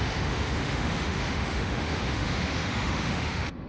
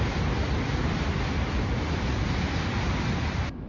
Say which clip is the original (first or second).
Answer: second